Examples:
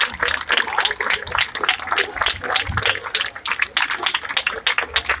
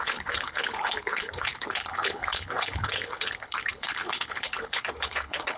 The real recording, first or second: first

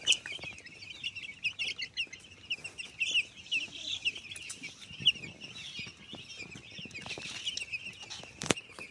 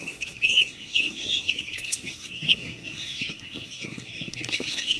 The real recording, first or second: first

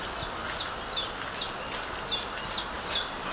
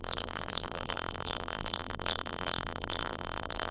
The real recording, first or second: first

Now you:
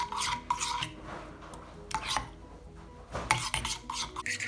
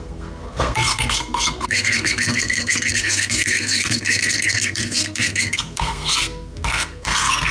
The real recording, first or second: first